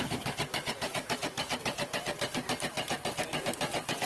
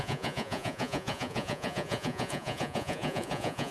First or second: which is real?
first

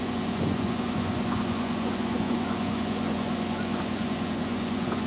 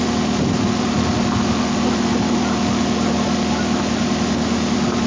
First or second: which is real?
second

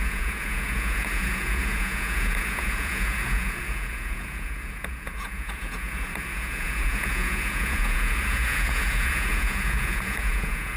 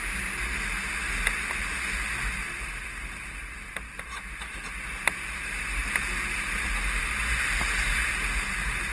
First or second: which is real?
second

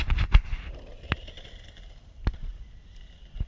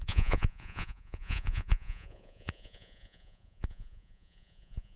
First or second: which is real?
first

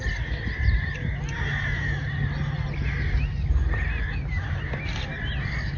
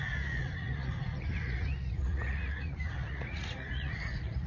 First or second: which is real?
first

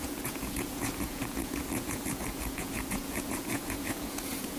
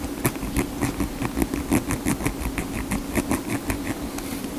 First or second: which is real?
second